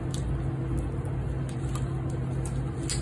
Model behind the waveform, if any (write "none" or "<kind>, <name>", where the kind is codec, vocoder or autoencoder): none